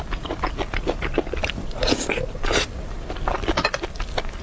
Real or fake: real